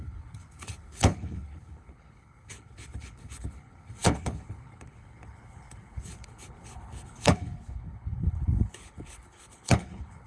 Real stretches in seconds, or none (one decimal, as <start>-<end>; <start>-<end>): none